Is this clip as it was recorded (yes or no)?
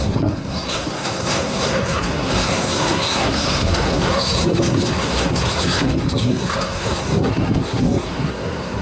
no